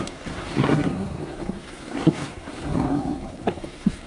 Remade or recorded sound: remade